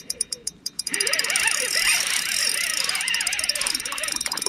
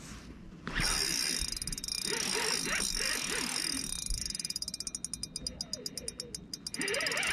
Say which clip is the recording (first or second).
second